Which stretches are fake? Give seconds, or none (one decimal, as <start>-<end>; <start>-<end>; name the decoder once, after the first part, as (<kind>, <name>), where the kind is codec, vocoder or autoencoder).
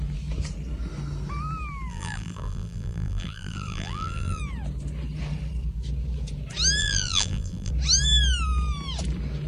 1.9-4.4 (vocoder, BigVGAN v2); 6.8-7.7